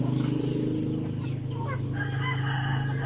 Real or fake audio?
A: real